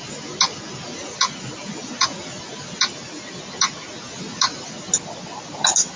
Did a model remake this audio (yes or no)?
no